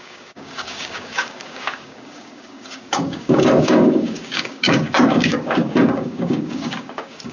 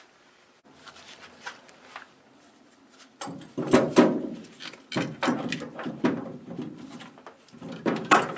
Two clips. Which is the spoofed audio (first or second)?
first